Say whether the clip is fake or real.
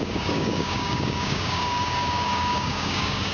fake